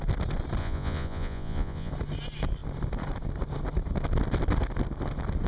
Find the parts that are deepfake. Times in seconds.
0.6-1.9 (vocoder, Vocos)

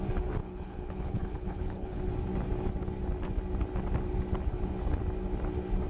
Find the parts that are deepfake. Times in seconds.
0.4-2.1 (codec, HILCodec)

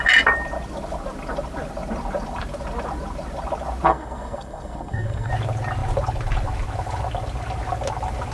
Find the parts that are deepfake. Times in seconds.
3.9-5.3 (codec, SNAC)